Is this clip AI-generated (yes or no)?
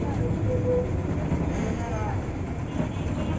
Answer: no